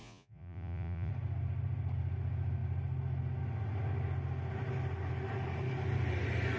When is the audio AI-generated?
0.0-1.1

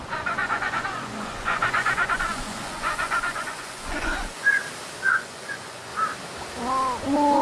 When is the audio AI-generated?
0.0-4.6; 5.1-5.9

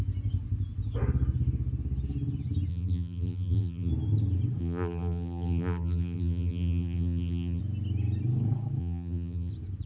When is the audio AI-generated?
2.7-3.9; 4.6-7.6; 8.8-9.5

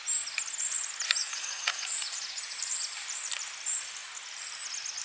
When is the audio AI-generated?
1.2-2.4

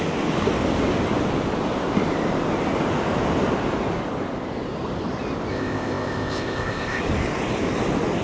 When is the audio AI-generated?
5.5-7.0